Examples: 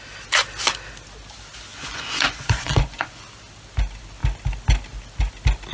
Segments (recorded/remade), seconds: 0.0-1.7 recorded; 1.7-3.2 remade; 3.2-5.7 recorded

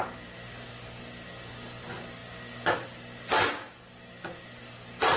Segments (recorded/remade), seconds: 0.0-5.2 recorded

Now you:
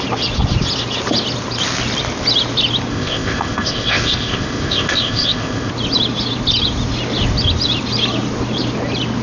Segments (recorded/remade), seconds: 0.0-2.9 recorded; 2.9-5.7 remade; 5.7-9.2 recorded